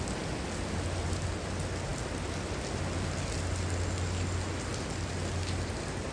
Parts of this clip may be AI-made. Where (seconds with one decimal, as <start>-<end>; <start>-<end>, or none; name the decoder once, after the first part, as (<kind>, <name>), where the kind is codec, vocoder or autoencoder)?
none